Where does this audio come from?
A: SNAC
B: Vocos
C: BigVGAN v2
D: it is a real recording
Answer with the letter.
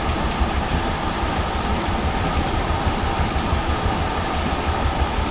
C